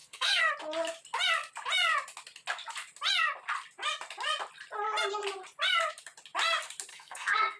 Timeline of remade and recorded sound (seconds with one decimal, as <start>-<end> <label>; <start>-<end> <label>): 0.0-0.5 remade; 0.5-6.9 recorded; 6.9-7.6 remade